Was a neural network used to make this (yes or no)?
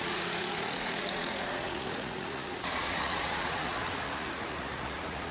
yes